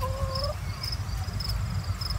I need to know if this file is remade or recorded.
recorded